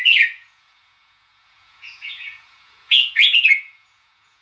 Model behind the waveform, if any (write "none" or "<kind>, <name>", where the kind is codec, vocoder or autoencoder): vocoder, Vocos